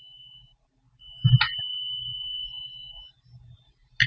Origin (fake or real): real